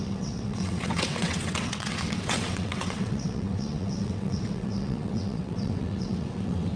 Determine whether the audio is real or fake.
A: fake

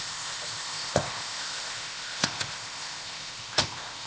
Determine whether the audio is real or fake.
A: fake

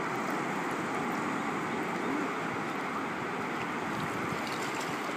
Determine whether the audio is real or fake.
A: real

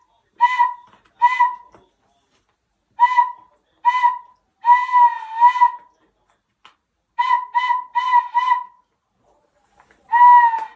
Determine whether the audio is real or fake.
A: real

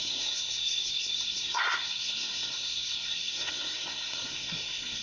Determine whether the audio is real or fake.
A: fake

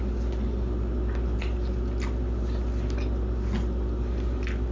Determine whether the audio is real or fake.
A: real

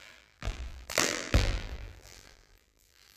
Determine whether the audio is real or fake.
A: fake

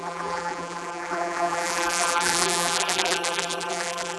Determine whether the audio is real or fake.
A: fake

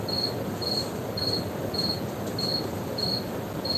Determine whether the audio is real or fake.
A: real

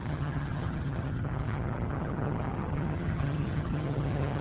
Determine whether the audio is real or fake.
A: fake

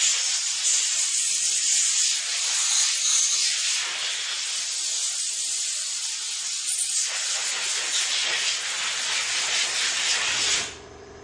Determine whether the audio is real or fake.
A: real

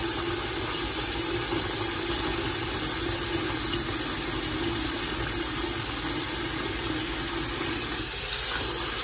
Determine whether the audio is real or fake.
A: real